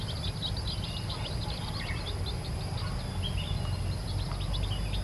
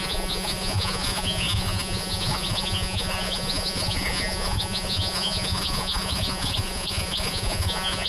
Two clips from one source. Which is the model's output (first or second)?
second